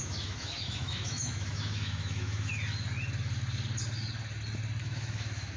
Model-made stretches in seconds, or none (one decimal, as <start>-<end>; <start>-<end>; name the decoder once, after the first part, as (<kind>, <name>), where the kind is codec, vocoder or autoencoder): 0.0-2.5 (autoencoder, DAC-VAE); 4.8-5.6